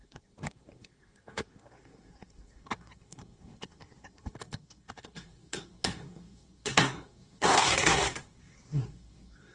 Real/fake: fake